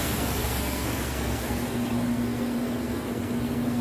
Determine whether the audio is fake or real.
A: fake